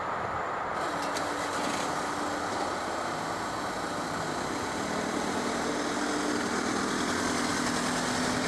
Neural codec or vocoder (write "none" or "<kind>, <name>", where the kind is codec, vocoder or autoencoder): none